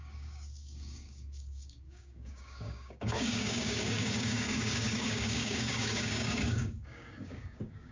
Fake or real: fake